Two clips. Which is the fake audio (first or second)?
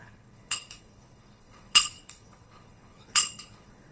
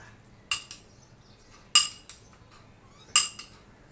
first